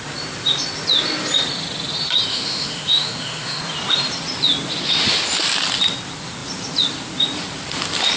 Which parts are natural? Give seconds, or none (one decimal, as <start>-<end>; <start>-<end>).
0.0-2.3; 3.6-8.2